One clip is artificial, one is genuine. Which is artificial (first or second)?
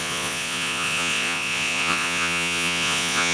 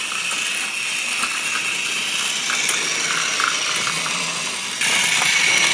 first